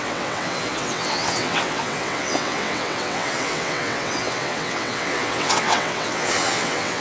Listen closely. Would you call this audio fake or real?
fake